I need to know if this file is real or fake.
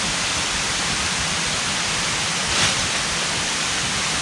fake